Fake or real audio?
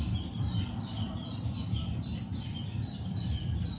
fake